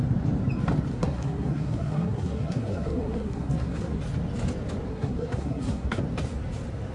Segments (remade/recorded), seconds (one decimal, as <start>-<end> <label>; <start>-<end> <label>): 0.0-0.9 recorded; 0.9-4.0 remade; 4.0-4.9 recorded; 4.9-6.0 remade; 6.0-6.9 recorded